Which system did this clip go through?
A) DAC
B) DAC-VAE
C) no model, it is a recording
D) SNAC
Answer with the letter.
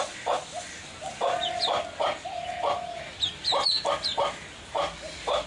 C